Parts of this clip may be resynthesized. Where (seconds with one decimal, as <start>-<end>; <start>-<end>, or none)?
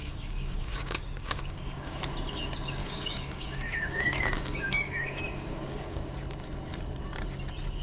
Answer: 0.0-2.0; 2.8-6.1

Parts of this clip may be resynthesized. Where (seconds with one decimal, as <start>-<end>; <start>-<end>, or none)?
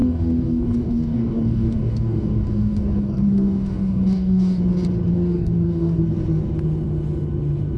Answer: 0.0-4.6; 5.1-6.0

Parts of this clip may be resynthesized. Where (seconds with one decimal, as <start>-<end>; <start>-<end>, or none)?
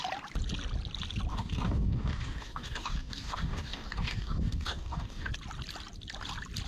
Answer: 1.3-5.3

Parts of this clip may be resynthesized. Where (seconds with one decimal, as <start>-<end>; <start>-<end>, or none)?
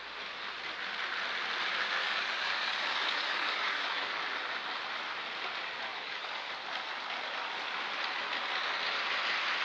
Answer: 2.0-4.2; 5.9-6.5